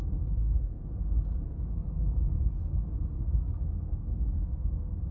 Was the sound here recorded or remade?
remade